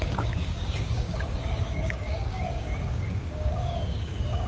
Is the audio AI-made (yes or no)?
yes